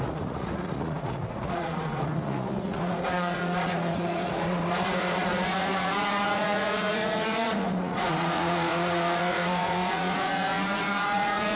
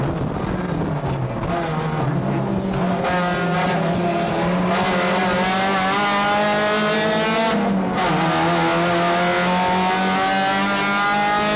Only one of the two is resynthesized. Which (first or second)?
first